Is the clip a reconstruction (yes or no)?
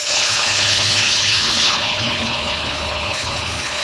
yes